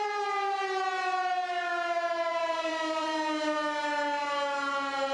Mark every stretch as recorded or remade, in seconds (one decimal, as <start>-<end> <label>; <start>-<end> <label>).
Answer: 0.0-2.3 recorded; 2.3-3.1 remade; 3.1-5.1 recorded